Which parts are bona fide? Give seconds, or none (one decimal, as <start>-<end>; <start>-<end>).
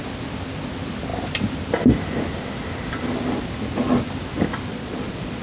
0.0-4.7